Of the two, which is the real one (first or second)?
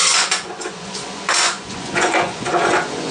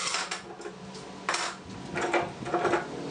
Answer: second